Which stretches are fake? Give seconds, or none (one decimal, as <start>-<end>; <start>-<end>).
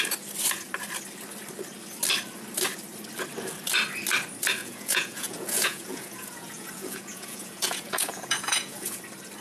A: 4.6-9.0